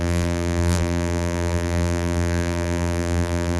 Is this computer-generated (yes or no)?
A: yes